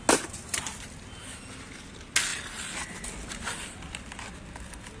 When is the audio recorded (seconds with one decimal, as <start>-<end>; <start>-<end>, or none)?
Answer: 0.0-5.0

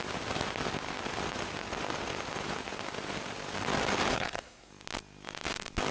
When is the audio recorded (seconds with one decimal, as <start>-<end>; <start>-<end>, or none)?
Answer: 0.0-4.1; 4.7-5.9

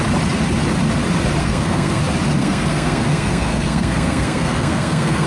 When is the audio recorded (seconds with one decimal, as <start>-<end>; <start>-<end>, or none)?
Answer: 0.0-1.4; 2.0-2.4

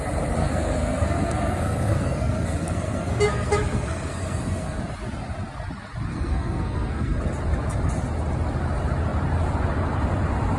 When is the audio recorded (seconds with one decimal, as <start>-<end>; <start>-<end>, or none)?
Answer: 0.0-0.4; 4.8-6.1; 7.2-10.6

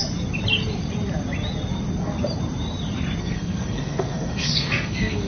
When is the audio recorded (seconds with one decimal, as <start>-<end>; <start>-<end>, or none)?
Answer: 0.0-3.2

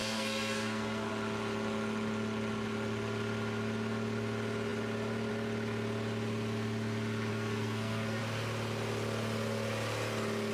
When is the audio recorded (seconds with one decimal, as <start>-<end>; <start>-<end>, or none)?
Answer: 1.1-7.3; 8.2-10.5